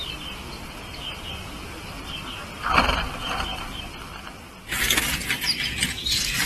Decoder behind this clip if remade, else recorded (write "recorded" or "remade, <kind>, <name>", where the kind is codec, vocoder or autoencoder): recorded